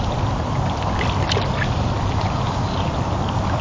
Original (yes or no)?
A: yes